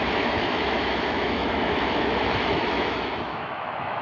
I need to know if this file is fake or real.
fake